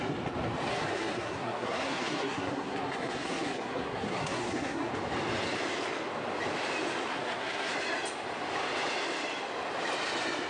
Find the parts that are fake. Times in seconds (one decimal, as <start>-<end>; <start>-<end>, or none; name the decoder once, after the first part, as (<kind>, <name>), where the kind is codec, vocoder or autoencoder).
0.7-4.9 (codec, SNAC); 7.1-7.7